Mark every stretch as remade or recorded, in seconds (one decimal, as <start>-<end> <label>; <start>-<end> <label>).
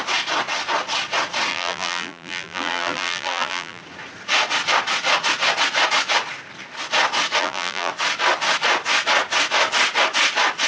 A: 0.0-1.5 recorded; 1.5-3.8 remade; 3.8-7.4 recorded; 7.4-7.9 remade; 7.9-10.7 recorded